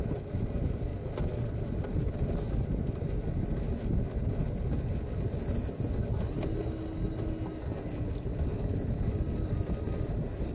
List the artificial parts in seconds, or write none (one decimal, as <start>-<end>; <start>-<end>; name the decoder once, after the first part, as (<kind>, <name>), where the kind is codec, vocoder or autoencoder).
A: none